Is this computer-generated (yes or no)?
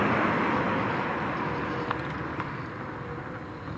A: no